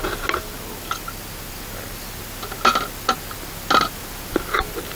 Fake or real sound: real